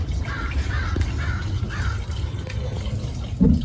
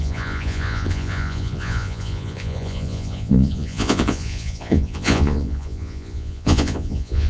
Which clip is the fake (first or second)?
second